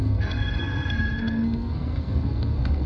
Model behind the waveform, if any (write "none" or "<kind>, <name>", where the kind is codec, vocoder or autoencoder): codec, SNAC